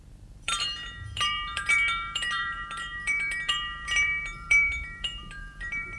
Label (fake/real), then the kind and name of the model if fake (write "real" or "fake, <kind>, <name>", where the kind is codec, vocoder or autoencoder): fake, vocoder, BigVGAN v2